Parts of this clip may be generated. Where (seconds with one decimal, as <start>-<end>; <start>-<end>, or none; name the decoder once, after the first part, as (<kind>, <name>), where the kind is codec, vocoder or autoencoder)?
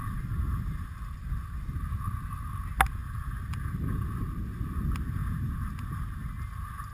none